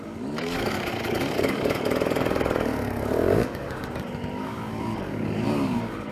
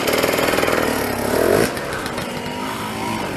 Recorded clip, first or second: second